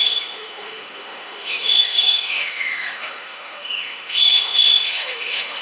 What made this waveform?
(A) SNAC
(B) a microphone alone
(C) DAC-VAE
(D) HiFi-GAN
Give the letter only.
C